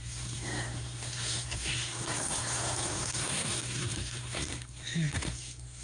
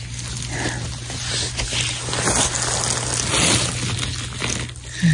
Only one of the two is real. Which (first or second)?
second